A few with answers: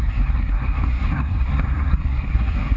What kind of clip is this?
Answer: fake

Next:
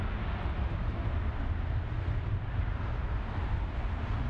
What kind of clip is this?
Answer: real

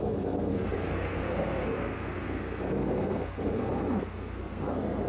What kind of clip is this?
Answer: fake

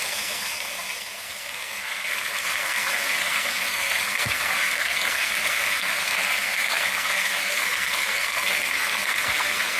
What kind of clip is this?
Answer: fake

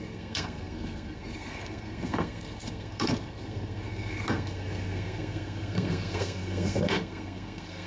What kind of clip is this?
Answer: fake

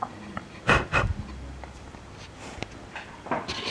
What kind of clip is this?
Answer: real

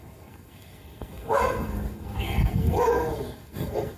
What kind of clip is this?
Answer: fake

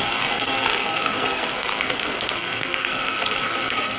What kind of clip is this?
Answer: fake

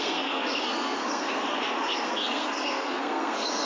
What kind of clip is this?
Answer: fake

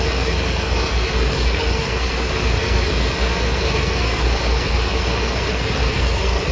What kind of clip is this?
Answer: fake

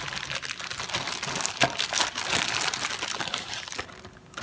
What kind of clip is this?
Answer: real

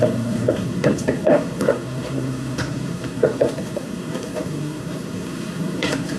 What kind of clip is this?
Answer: fake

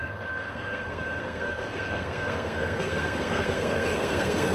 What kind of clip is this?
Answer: fake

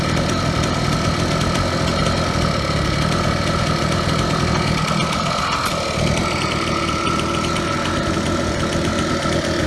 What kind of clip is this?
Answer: real